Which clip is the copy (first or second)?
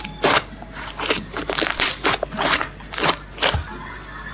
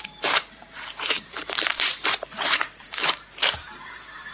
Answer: second